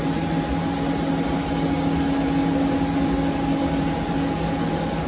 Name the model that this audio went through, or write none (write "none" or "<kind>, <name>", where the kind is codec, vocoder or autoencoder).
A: none